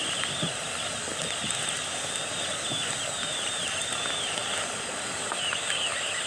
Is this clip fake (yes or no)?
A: no